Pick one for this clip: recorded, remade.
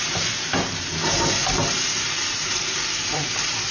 remade